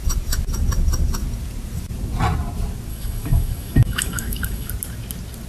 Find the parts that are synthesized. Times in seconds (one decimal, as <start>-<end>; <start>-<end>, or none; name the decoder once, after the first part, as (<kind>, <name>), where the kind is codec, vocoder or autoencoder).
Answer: 2.9-4.7 (autoencoder, DAC-VAE)